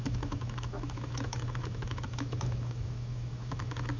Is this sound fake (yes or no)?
yes